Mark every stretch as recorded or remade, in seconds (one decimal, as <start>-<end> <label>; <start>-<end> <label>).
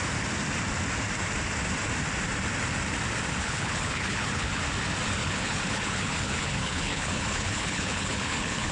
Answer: 0.0-3.4 recorded; 3.4-4.6 remade; 4.6-5.2 recorded; 5.2-8.7 remade